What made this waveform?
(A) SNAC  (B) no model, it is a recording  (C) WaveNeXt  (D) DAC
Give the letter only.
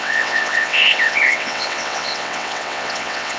C